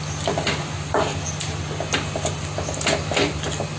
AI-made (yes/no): no